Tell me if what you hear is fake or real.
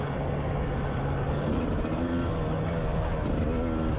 real